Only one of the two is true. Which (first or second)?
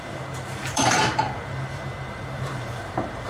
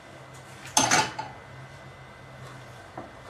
second